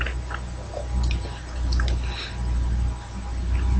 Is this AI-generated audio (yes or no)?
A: no